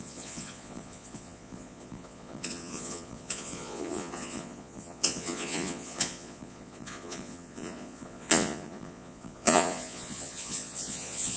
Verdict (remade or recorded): remade